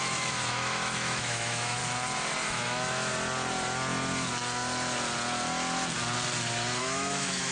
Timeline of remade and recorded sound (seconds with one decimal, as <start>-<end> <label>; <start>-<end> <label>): 0.0-1.8 remade; 1.8-2.5 recorded; 2.5-3.1 remade; 3.1-6.8 recorded; 6.8-7.5 remade